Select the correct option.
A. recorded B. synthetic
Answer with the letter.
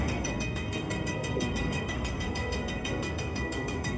B